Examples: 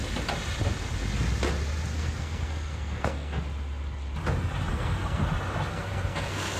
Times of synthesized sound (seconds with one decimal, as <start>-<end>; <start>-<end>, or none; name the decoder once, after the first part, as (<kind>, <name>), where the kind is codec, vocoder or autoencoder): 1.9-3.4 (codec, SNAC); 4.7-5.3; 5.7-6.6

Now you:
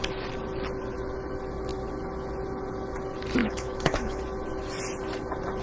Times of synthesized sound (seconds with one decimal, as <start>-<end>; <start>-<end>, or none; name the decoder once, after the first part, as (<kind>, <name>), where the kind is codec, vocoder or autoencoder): 3.4-4.2 (autoencoder, DAC-VAE)

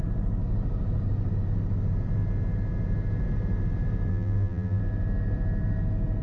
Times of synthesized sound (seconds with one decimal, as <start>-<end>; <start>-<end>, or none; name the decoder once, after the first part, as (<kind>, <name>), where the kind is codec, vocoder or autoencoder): 4.1-4.8 (vocoder, BigVGAN v2)

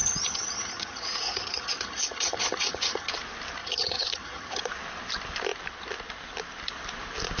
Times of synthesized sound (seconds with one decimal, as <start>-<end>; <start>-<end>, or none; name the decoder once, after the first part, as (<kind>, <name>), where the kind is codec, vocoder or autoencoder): 0.0-3.1 (vocoder, HiFi-GAN); 3.6-4.6

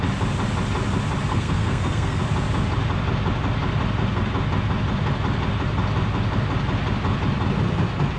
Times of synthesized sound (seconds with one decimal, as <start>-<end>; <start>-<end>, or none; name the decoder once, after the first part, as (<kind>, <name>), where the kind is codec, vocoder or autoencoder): 1.3-2.2 (codec, SNAC)

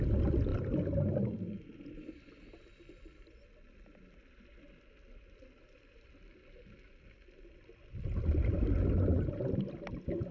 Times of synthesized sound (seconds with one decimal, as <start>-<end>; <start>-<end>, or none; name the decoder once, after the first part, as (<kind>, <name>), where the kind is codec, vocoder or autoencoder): none

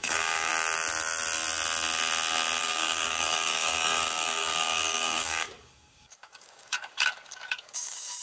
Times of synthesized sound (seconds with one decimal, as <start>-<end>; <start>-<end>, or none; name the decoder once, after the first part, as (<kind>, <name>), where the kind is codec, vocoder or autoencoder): 0.0-0.5 (codec, DAC); 2.6-8.2